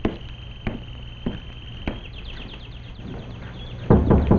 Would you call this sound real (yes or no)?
yes